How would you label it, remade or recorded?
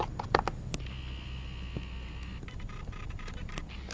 recorded